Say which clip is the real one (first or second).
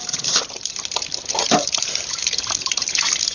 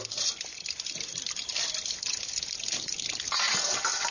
second